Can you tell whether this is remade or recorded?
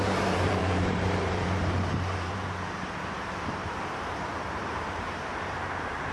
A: remade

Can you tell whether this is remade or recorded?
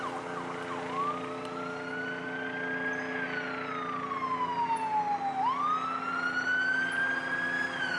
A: recorded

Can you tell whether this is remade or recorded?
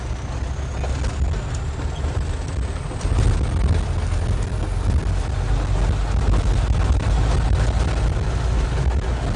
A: recorded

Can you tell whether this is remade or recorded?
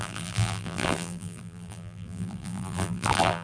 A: remade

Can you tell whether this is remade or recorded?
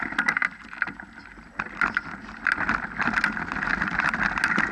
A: recorded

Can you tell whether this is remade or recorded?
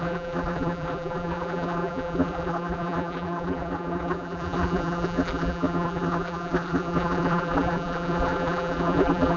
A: remade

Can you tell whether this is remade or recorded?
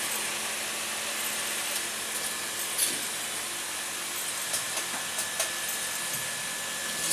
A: recorded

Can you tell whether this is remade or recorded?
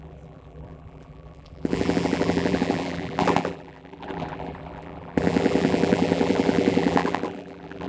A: remade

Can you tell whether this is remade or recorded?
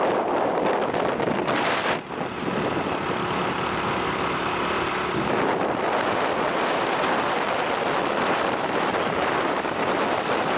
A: remade